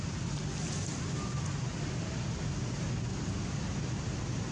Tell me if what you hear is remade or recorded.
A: recorded